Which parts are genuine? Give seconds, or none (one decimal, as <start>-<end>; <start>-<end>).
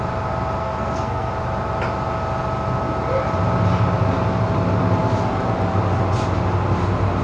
0.0-0.6; 1.3-7.2